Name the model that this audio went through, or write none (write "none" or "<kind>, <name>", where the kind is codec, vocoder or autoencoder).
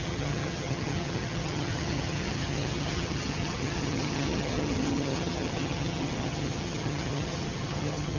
vocoder, HiFi-GAN